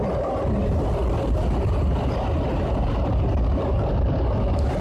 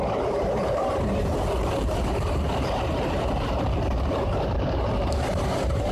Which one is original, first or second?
first